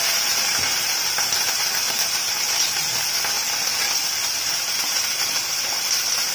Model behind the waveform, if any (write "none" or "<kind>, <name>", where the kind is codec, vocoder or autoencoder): vocoder, BigVGAN v2